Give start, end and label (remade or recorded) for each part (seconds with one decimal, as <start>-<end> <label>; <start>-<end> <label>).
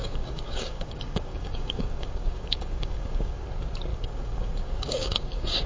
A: 0.0-3.4 remade; 3.4-3.9 recorded; 3.9-5.7 remade